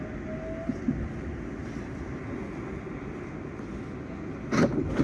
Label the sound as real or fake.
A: real